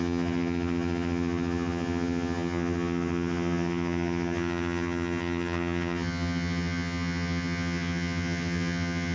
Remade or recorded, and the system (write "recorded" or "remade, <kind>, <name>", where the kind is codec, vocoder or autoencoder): remade, vocoder, HiFi-GAN